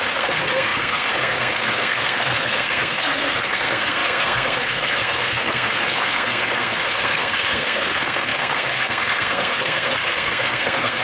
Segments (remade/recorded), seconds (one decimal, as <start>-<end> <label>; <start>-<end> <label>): 0.0-11.0 remade